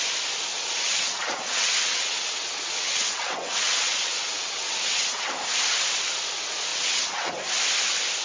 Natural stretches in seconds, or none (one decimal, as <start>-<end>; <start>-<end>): 0.0-0.5; 5.3-6.7; 7.3-8.2